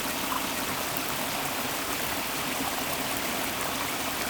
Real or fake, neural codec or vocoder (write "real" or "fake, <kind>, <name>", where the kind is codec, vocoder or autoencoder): real